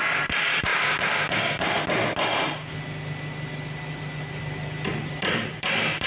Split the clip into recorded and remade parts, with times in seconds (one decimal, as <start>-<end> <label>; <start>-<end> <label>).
0.0-0.7 remade; 0.7-4.4 recorded; 4.4-6.1 remade